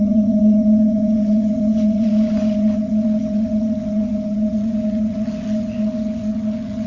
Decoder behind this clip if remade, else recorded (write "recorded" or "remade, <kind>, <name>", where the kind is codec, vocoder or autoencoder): remade, vocoder, HiFi-GAN